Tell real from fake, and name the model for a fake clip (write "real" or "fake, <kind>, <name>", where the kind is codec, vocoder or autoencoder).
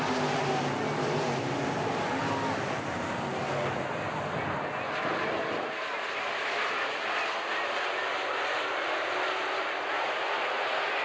real